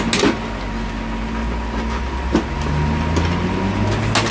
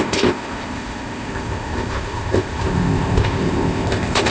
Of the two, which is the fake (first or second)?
second